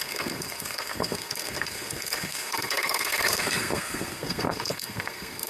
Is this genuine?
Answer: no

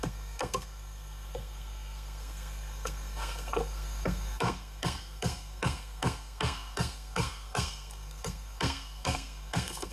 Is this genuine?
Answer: no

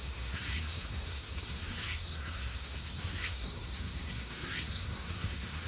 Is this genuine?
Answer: no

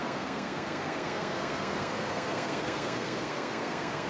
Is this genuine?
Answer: no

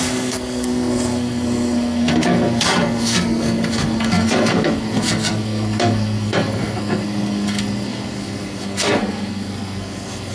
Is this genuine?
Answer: no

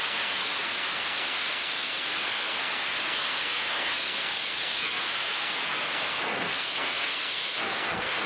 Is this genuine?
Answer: no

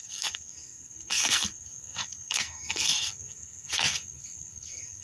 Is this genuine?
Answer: no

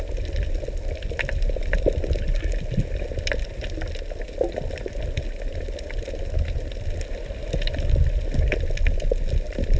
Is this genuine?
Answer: yes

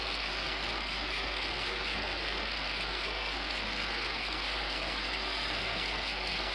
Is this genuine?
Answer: no